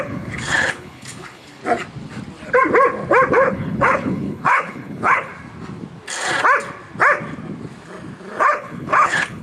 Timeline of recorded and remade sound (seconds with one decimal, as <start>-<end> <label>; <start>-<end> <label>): 0.0-1.6 remade; 1.6-3.3 recorded; 3.3-5.3 remade; 5.3-8.4 recorded; 8.4-9.4 remade